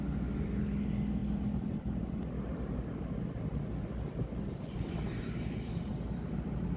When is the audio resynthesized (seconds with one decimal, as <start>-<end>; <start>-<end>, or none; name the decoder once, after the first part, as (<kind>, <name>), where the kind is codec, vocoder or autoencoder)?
none